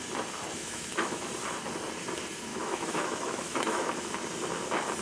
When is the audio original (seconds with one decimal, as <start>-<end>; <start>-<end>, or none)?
0.0-0.6; 1.3-2.5; 3.9-5.0